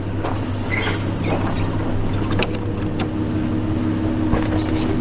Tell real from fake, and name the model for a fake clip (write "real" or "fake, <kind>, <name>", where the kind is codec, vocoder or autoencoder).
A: real